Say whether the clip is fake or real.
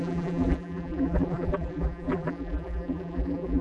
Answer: fake